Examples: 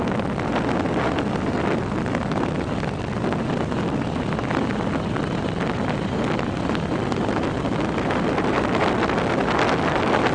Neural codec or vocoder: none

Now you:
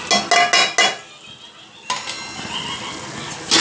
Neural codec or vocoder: none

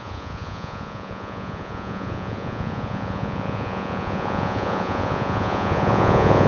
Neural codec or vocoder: vocoder, Vocos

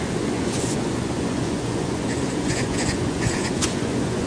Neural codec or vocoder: vocoder, Vocos